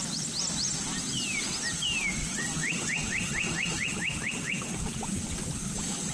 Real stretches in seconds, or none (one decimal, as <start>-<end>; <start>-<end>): 0.0-2.2; 5.4-6.1